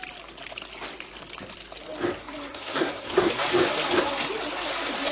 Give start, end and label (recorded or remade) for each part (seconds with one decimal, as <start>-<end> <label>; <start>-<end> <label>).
0.0-2.5 recorded; 2.5-3.3 remade; 3.3-5.1 recorded